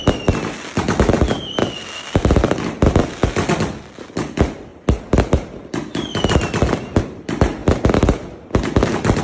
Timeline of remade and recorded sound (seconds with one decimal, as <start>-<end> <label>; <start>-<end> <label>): 0.0-9.2 recorded